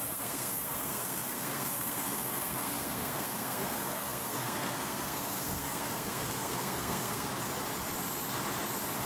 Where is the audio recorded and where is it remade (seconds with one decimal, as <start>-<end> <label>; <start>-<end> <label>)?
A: 0.0-7.3 remade; 7.3-9.1 recorded